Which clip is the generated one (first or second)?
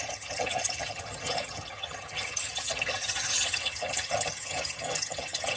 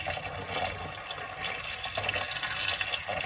first